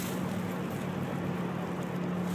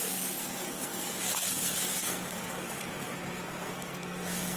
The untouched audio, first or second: first